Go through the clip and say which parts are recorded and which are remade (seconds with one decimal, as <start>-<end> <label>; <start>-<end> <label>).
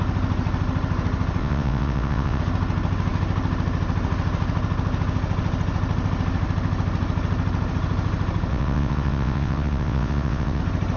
0.0-1.4 recorded; 1.4-2.4 remade; 2.4-8.5 recorded; 8.5-10.6 remade; 10.6-11.0 recorded